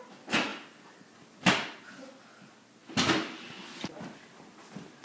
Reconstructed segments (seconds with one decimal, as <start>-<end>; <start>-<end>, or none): none